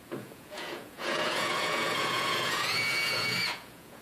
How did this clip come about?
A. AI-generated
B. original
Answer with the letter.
A